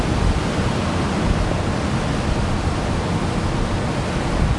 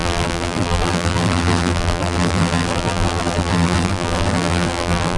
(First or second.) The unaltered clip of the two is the first